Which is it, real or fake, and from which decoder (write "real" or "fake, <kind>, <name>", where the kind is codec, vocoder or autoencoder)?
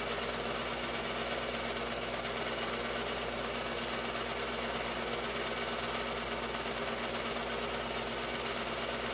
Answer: real